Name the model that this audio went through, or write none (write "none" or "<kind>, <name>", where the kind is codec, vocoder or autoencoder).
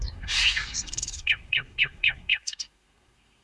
codec, SNAC